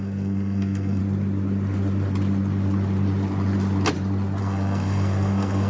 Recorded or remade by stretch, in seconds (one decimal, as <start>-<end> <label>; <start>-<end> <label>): 0.0-1.0 remade; 1.0-4.4 recorded; 4.4-5.7 remade